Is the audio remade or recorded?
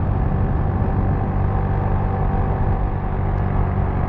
recorded